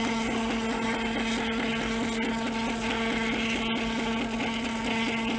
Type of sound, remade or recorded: recorded